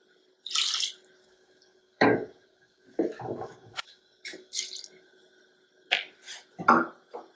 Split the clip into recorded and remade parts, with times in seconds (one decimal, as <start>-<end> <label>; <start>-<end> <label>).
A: 0.0-1.2 recorded; 1.2-4.6 remade; 4.6-7.3 recorded